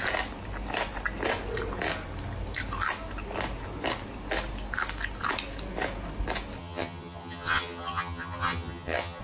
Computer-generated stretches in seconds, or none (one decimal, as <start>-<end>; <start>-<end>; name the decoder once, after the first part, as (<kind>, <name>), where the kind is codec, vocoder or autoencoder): 6.6-9.2 (vocoder, HiFi-GAN)